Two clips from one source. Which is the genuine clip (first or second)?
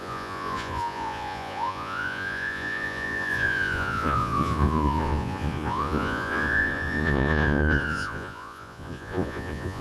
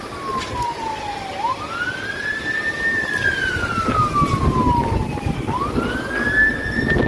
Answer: second